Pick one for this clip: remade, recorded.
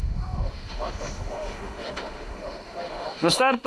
remade